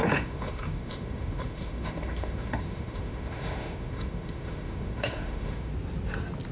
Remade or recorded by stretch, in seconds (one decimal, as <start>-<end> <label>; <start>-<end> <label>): 0.0-5.7 remade; 5.7-6.5 recorded